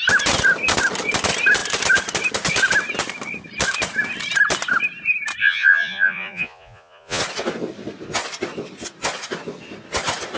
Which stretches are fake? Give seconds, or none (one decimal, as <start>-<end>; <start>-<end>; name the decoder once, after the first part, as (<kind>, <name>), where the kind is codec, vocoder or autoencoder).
5.4-7.2 (vocoder, Vocos)